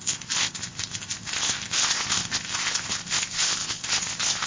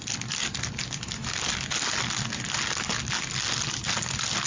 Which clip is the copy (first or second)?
first